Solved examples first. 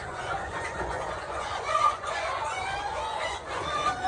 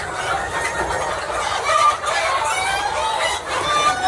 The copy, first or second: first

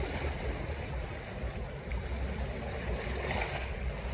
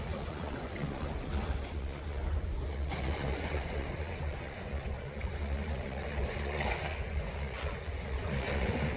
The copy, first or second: second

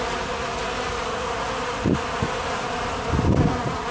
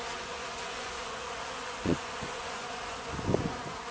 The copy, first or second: second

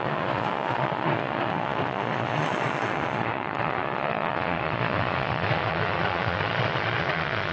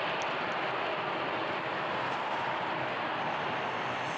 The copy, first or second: first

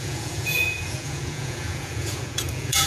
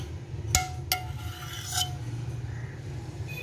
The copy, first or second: first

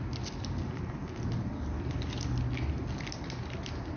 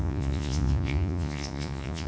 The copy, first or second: second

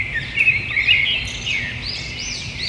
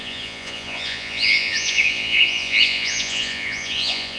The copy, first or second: second